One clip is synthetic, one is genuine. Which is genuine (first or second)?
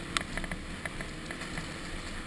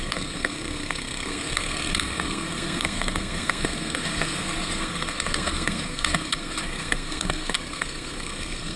first